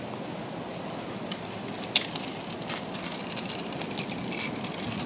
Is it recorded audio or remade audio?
recorded